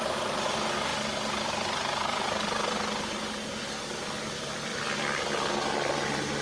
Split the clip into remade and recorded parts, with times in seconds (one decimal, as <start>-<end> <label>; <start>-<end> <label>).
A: 0.0-6.4 recorded